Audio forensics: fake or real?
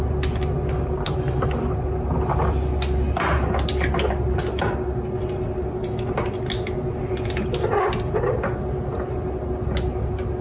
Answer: real